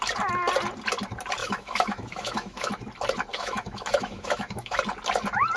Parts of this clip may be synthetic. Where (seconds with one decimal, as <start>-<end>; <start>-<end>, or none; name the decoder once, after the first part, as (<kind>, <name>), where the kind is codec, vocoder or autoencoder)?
1.4-2.7 (autoencoder, DAC-VAE); 3.3-4.8